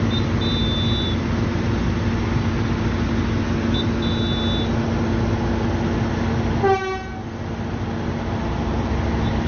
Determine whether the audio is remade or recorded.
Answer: recorded